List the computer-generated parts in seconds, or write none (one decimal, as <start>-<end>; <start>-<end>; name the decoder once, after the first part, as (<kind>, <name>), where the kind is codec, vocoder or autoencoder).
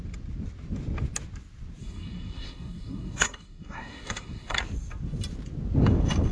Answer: 1.8-4.6 (codec, SNAC)